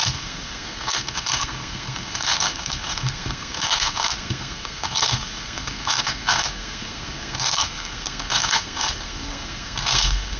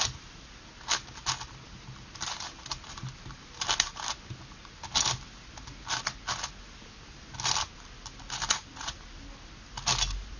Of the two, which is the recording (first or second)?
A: second